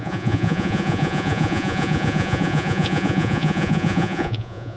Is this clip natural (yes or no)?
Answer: no